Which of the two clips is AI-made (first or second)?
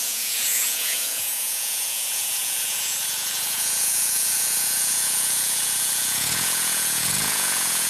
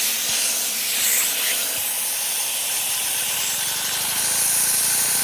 first